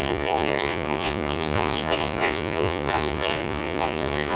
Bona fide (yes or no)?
no